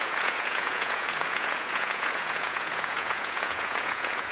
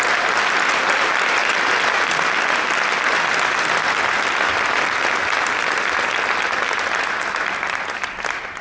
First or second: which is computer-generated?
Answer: first